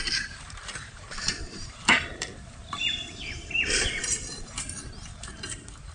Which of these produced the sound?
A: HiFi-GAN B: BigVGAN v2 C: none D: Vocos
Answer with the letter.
B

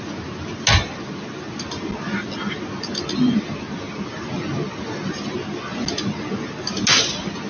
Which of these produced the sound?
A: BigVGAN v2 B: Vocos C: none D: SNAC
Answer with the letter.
C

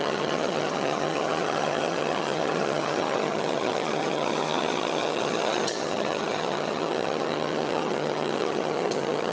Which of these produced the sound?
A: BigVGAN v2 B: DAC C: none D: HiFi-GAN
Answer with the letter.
D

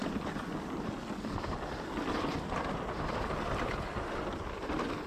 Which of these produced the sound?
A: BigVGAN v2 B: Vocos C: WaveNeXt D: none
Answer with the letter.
D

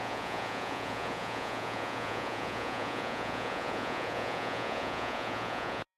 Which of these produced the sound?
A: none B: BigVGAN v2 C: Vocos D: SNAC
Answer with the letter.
C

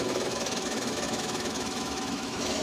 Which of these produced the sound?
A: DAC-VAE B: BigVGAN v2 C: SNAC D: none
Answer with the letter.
A